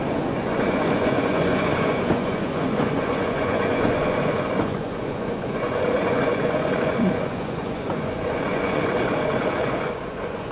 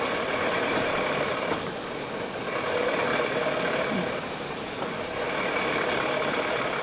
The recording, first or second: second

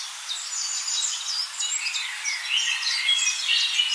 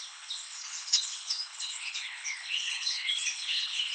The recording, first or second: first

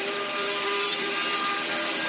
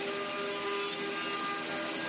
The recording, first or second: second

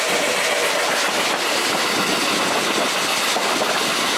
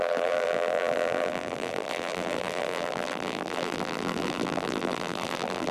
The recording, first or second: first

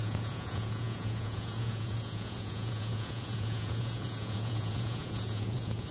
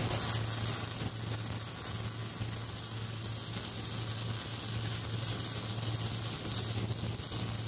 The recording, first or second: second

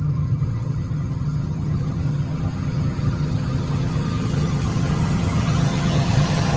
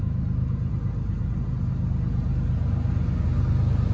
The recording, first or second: second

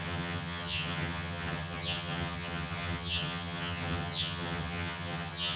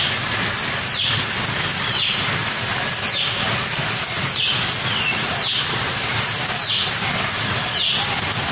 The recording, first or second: second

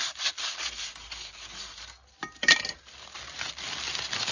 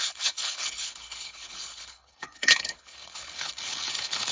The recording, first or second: first